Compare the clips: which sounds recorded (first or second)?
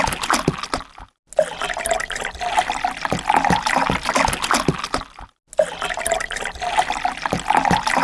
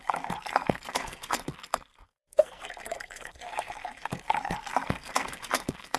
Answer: first